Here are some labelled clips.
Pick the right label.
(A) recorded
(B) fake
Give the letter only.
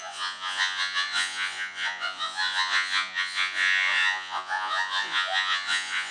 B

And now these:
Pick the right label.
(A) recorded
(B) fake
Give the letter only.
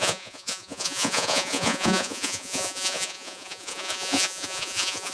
B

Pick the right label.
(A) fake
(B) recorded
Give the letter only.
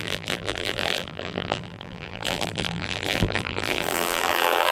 A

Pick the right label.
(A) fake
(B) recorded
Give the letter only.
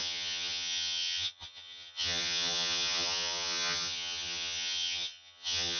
A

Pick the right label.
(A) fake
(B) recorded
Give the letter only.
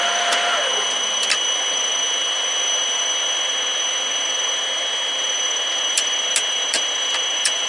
A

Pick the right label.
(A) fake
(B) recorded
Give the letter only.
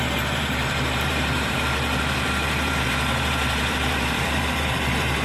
A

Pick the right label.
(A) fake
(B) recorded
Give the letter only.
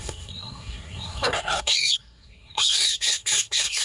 A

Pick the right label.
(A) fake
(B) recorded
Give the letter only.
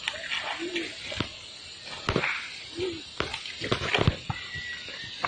B